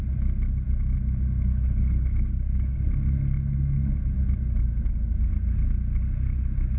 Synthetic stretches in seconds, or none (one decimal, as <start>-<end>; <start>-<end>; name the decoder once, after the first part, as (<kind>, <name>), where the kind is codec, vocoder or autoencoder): 1.5-2.9 (codec, HILCodec)